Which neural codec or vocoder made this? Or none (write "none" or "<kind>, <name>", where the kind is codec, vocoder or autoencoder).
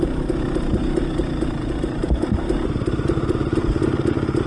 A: none